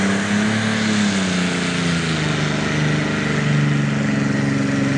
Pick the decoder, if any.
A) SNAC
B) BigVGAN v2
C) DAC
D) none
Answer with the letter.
D